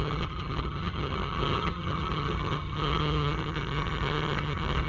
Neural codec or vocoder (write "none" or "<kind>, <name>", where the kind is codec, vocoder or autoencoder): vocoder, HiFi-GAN